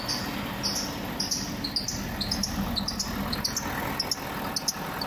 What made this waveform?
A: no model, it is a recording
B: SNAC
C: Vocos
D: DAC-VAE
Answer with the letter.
A